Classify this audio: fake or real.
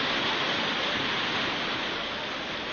real